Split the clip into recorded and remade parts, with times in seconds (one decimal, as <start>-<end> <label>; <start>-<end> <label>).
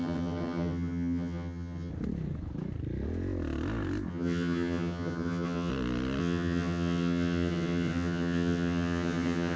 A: 0.0-1.9 remade; 1.9-4.1 recorded; 4.1-5.7 remade; 5.7-6.2 recorded; 6.2-9.6 remade